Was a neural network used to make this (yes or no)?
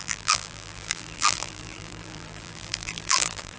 yes